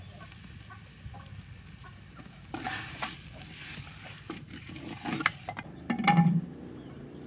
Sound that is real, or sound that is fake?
real